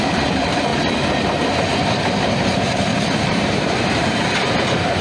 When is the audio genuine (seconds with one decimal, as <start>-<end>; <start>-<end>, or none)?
0.7-1.6